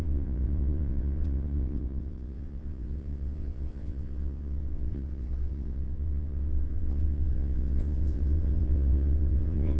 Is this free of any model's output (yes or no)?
no